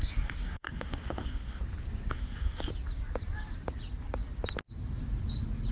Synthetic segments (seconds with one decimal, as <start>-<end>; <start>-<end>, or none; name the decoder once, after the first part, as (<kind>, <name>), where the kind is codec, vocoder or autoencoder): 0.0-1.6 (codec, SNAC); 2.1-2.7